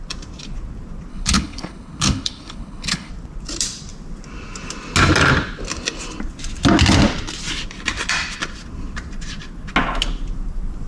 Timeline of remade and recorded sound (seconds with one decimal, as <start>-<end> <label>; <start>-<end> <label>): 0.0-1.1 recorded; 1.1-3.1 remade; 3.1-10.9 recorded